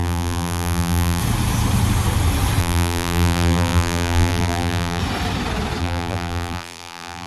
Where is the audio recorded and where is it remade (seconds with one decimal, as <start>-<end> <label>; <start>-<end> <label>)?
0.0-1.2 remade; 1.2-2.6 recorded; 2.6-5.0 remade; 5.0-5.8 recorded; 5.8-7.3 remade